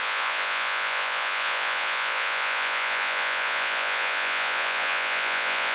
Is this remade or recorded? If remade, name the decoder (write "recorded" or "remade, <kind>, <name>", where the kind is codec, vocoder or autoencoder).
remade, vocoder, Vocos